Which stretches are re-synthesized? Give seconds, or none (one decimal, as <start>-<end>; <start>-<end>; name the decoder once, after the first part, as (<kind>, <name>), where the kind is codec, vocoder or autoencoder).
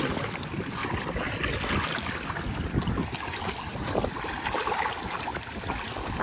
none